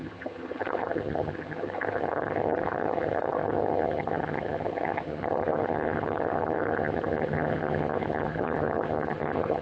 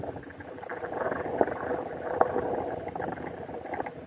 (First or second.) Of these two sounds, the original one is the second